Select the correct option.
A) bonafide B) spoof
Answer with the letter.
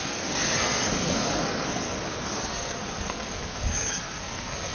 B